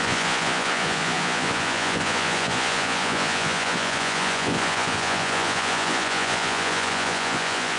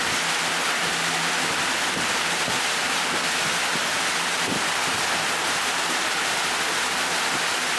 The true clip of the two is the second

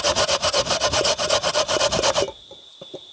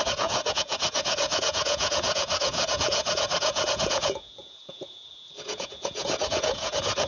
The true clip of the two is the first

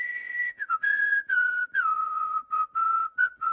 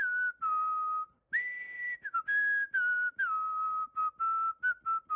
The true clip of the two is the second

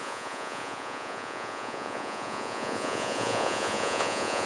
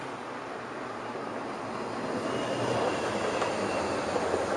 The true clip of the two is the second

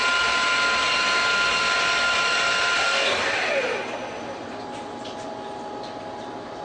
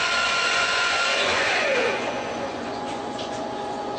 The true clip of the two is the first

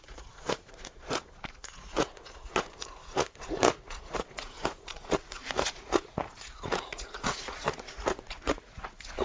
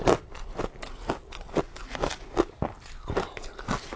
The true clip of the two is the second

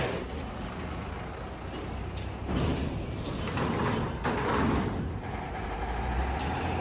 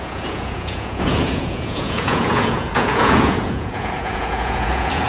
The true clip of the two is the first